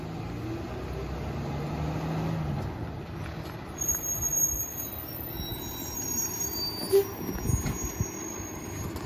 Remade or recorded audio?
recorded